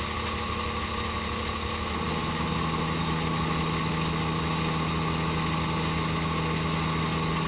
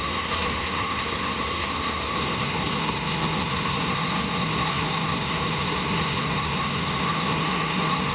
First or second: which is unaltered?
first